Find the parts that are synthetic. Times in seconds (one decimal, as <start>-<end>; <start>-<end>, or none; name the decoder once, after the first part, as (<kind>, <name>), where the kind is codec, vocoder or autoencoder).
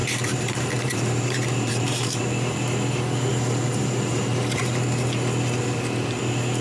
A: 0.0-2.2 (vocoder, BigVGAN v2); 3.3-4.6